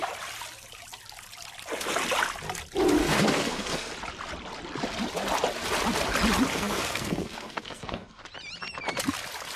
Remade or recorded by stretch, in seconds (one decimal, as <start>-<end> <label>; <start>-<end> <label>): 0.0-3.0 recorded; 3.0-3.9 remade; 3.9-6.5 recorded; 6.5-8.2 remade; 8.2-9.6 recorded